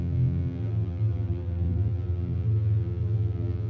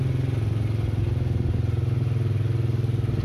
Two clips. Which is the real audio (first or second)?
second